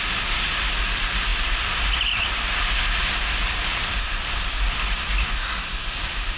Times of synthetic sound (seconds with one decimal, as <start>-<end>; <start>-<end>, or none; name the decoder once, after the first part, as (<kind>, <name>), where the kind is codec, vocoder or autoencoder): 1.3-2.8 (vocoder, BigVGAN v2); 3.7-6.4

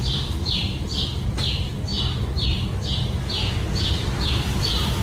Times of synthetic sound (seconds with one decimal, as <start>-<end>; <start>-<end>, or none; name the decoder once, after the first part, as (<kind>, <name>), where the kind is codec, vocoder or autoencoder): 0.0-5.0 (vocoder, BigVGAN v2)

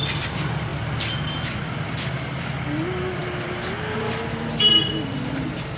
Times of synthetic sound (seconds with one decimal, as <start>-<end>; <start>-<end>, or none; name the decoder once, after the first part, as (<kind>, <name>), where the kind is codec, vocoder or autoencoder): none

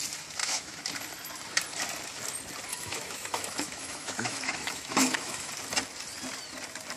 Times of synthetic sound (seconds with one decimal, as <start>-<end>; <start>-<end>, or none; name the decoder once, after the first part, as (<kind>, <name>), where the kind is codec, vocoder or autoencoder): 0.4-0.9 (autoencoder, DAC-VAE); 2.7-5.5

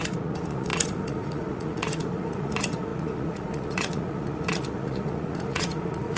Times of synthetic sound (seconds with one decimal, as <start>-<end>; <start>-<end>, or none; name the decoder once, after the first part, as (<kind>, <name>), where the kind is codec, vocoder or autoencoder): 0.0-6.2 (vocoder, Vocos)

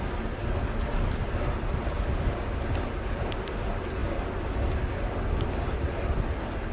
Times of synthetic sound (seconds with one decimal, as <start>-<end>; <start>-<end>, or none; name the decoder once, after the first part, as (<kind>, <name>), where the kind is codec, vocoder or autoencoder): none

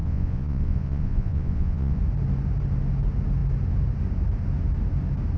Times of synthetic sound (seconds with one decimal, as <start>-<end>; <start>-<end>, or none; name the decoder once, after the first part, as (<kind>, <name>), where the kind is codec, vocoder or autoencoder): 0.0-2.0 (vocoder, Vocos)

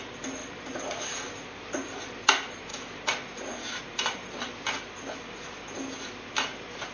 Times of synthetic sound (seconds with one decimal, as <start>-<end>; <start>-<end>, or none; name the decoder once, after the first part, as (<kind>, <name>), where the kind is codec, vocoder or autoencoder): none